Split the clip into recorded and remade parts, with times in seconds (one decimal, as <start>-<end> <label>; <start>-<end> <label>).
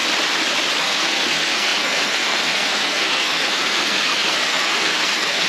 0.0-0.8 recorded; 0.8-5.5 remade